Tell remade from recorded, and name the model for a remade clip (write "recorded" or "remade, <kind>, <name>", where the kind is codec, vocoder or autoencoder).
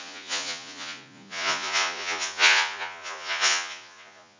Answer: remade, vocoder, Vocos